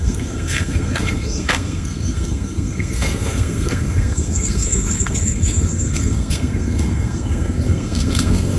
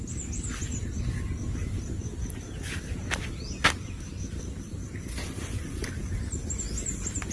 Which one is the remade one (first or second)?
first